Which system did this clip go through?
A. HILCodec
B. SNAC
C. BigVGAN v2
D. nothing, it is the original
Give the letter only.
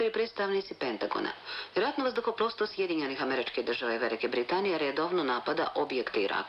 D